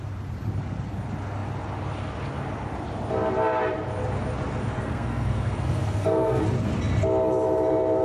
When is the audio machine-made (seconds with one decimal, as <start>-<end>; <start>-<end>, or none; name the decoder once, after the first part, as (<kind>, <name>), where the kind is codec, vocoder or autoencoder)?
4.7-6.4 (codec, SNAC)